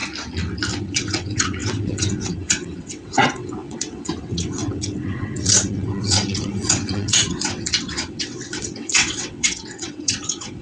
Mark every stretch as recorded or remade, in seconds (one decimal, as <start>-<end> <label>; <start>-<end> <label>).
0.0-0.8 recorded; 0.8-10.6 remade